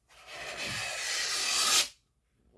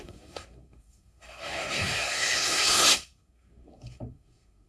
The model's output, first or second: second